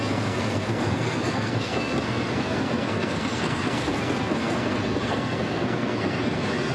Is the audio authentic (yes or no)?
no